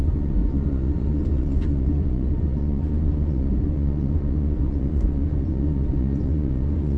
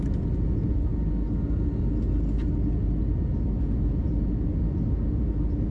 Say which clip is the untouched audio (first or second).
second